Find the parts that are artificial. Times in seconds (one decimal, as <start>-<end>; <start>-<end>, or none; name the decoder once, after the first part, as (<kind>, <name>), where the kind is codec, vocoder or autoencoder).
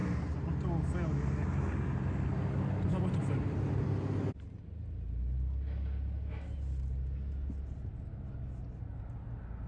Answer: none